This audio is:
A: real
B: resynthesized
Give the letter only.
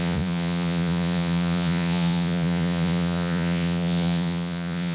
B